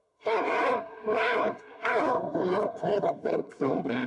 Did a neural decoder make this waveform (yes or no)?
yes